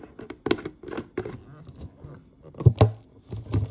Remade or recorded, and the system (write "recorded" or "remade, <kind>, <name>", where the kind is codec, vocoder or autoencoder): recorded